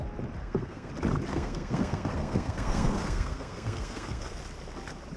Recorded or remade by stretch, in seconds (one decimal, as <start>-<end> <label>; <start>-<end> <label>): 0.0-0.4 recorded; 0.4-0.9 remade; 0.9-1.3 recorded; 1.3-4.4 remade; 4.4-5.2 recorded